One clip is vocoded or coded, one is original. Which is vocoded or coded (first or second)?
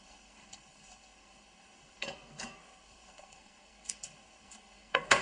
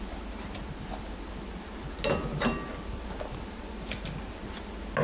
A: first